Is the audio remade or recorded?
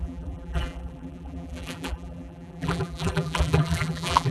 remade